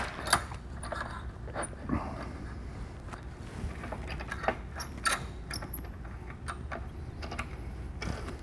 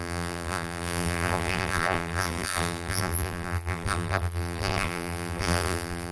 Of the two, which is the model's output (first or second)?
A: second